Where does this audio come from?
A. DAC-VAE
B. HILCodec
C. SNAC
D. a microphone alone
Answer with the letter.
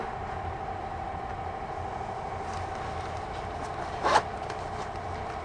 D